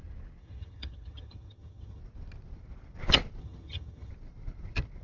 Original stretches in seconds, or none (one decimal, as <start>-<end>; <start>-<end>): 0.0-0.4; 2.0-3.4; 4.1-5.0